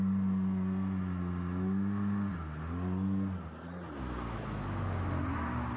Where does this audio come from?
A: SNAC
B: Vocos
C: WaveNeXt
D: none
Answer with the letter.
D